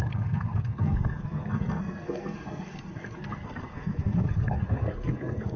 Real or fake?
fake